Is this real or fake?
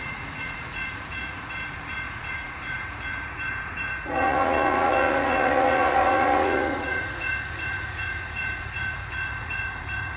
fake